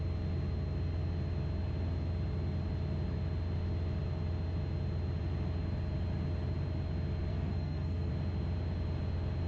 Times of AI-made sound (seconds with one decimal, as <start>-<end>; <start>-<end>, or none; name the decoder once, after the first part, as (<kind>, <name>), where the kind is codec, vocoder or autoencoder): 7.3-8.1 (codec, SNAC)